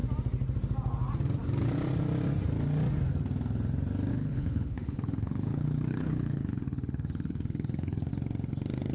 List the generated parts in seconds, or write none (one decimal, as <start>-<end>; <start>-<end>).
4.1-8.1

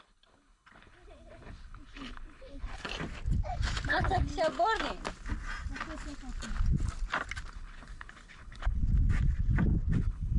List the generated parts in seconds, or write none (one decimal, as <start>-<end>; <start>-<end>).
0.0-2.9; 3.9-4.3; 7.5-8.8; 10.0-10.4

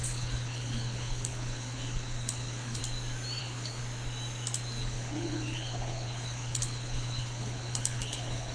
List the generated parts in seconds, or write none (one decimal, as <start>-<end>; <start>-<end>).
0.0-2.8; 3.4-3.8; 4.8-8.5

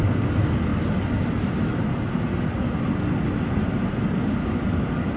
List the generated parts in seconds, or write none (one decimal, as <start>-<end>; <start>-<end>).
none